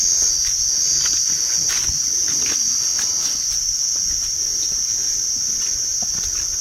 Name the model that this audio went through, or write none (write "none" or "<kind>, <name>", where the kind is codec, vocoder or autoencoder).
none